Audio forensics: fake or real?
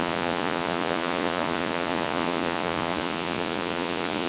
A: fake